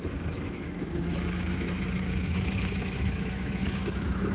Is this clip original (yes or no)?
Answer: no